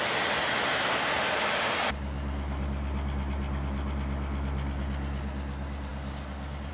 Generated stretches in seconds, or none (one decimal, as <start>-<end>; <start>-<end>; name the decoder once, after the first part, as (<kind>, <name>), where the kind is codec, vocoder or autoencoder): none